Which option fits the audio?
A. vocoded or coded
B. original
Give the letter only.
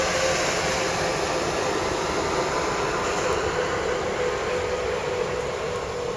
B